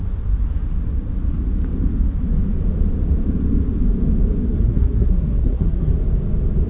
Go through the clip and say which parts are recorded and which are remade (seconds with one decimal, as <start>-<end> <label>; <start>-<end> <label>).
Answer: 0.0-4.5 recorded; 4.5-5.9 remade; 5.9-6.7 recorded